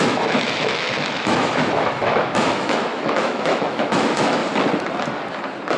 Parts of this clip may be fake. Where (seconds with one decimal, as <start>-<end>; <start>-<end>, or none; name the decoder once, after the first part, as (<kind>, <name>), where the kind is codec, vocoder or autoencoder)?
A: 0.0-4.4 (autoencoder, DAC-VAE)